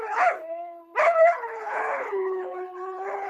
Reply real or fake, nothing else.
fake